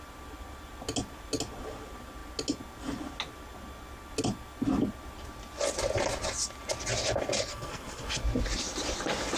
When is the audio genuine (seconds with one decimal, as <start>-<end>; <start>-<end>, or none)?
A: 0.0-7.5; 8.2-9.4